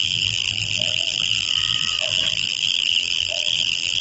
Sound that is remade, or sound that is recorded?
remade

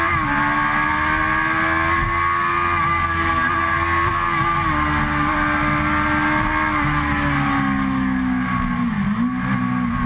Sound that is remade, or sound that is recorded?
recorded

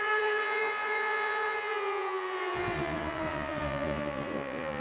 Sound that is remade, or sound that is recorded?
remade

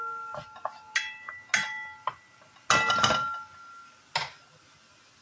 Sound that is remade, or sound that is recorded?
recorded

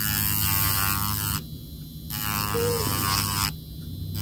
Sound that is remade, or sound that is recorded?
recorded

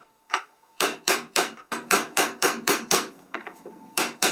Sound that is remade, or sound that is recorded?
remade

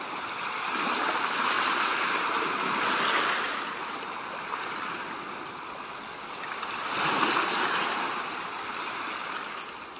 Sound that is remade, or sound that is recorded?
recorded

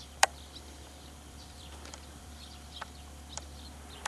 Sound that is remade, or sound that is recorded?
remade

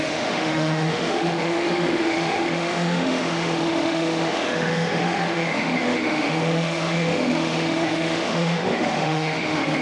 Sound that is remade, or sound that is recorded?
remade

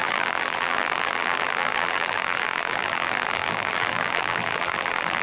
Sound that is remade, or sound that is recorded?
remade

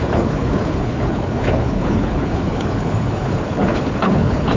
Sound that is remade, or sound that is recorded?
remade